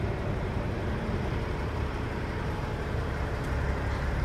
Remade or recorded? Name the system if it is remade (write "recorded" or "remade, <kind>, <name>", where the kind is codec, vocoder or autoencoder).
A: remade, vocoder, BigVGAN v2